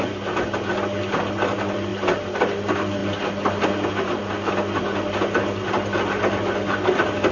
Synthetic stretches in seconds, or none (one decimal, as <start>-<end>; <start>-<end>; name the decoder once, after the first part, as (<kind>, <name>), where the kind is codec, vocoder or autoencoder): none